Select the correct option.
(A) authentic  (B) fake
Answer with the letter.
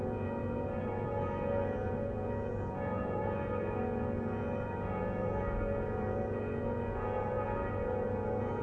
B